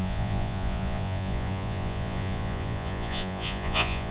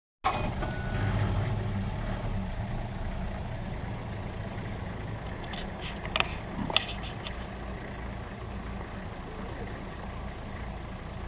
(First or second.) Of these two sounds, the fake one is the first